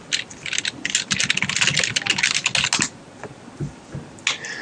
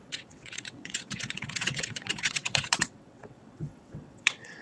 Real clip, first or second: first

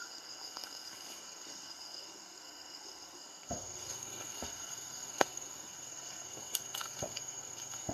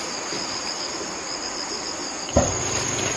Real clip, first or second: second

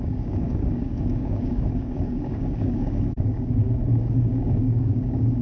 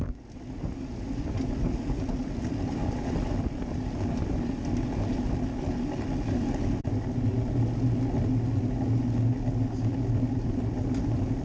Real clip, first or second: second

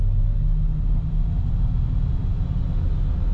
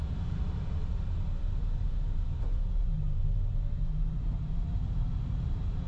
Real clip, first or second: first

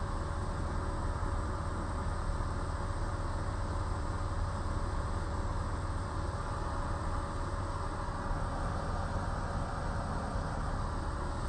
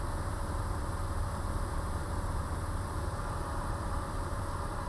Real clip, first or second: first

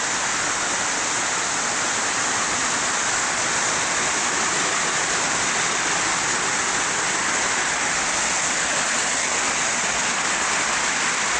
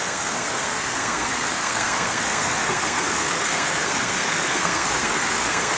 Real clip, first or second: first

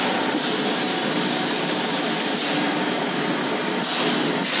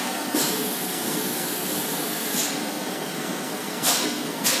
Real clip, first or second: first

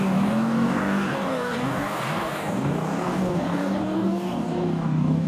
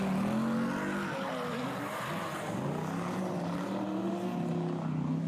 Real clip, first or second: second